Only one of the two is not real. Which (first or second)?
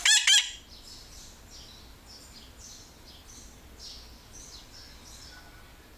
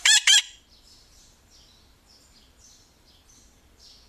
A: second